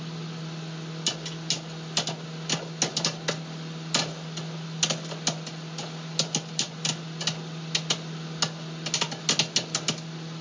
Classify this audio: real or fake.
real